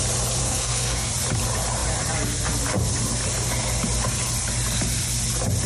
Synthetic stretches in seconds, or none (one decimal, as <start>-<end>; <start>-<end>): 0.4-1.1